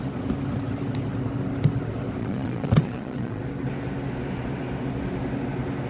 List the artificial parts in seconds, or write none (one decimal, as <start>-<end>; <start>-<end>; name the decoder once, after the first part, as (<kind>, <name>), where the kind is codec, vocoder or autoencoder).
2.2-3.4 (vocoder, Vocos)